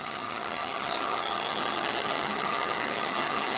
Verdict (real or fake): fake